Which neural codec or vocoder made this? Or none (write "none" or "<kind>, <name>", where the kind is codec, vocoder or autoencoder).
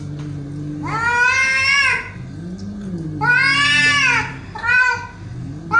none